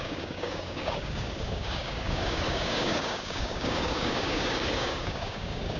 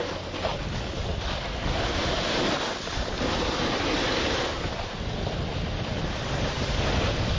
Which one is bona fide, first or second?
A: second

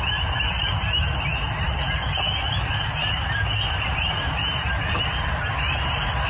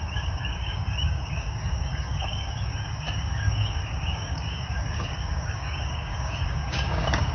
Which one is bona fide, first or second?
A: first